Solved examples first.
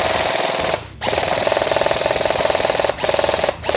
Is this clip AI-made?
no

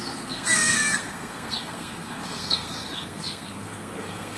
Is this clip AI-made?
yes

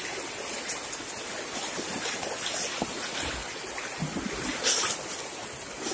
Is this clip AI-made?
no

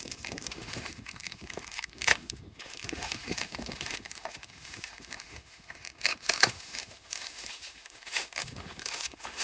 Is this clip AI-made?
yes